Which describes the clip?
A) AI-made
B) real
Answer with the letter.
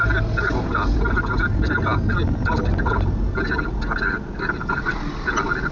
B